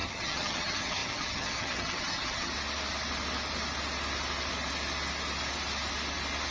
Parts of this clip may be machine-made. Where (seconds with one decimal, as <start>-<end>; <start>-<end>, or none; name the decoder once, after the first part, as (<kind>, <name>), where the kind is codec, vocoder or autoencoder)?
0.0-2.5 (vocoder, HiFi-GAN)